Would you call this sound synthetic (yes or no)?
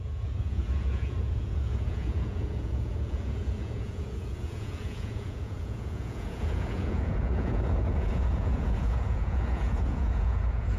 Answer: yes